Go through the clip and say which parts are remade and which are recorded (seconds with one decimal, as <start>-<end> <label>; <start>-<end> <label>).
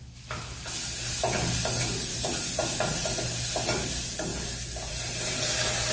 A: 0.0-5.9 recorded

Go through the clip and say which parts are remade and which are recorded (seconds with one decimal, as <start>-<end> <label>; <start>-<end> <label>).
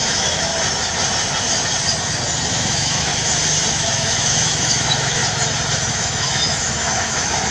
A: 0.0-0.5 remade; 0.5-2.5 recorded; 2.5-3.1 remade; 3.1-3.7 recorded; 3.7-5.2 remade; 5.2-5.9 recorded; 5.9-7.5 remade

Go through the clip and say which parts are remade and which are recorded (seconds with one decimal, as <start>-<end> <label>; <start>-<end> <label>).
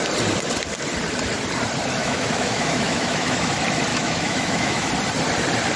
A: 0.0-2.0 recorded; 2.0-3.5 remade; 3.5-3.9 recorded; 3.9-4.9 remade; 4.9-5.8 recorded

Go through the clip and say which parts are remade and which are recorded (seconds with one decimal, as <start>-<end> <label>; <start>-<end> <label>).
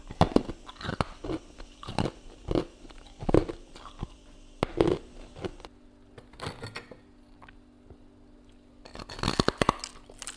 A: 0.0-0.9 recorded; 0.9-2.6 remade; 2.6-10.4 recorded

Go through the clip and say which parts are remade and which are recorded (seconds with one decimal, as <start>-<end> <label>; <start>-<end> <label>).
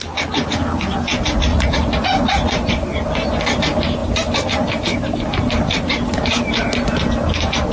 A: 0.0-1.5 recorded; 1.5-2.7 remade; 2.7-7.7 recorded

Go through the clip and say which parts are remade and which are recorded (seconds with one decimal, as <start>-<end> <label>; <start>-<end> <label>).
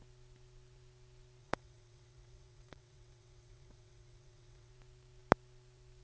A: 0.0-1.4 recorded; 1.4-4.7 remade; 4.7-6.0 recorded